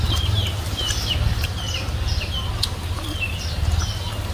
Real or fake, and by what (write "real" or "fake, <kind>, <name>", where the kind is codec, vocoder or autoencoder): real